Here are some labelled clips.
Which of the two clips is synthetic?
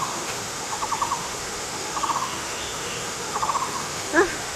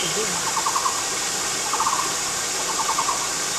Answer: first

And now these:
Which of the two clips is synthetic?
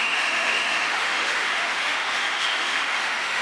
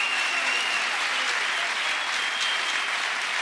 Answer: first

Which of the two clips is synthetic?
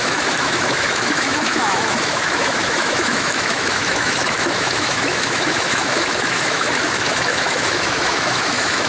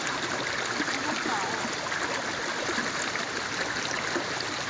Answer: first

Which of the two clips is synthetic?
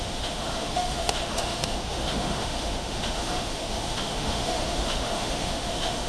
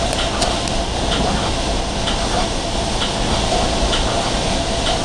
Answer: first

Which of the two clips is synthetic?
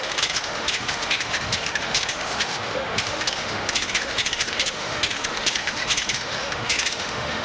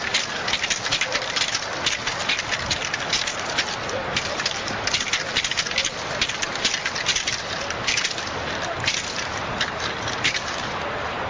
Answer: first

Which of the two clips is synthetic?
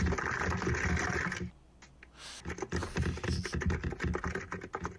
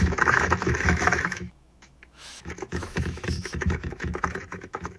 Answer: second